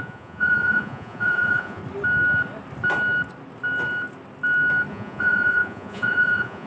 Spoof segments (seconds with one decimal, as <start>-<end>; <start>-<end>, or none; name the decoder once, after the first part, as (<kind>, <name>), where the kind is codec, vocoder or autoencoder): 0.0-1.8 (vocoder, Vocos); 4.9-6.7